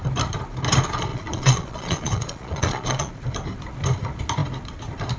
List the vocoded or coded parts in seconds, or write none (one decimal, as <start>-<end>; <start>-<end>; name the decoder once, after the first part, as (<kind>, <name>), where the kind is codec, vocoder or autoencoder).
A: 1.1-3.1 (vocoder, Vocos)